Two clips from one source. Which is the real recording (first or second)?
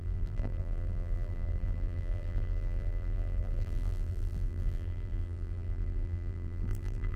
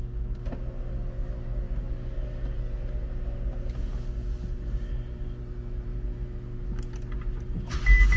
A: second